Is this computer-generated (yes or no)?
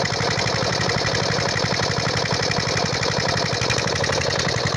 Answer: no